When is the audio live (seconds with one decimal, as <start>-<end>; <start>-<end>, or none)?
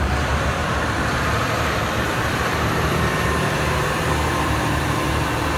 none